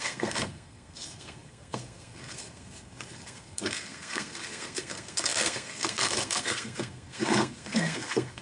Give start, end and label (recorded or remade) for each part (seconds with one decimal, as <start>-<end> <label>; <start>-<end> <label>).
0.0-8.4 remade